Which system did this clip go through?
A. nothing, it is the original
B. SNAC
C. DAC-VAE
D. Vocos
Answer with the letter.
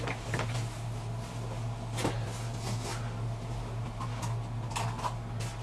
A